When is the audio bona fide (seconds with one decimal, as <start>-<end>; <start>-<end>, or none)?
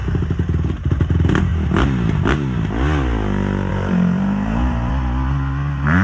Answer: 0.0-3.7; 4.9-6.0